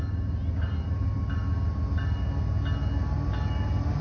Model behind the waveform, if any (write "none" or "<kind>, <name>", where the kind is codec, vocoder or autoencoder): none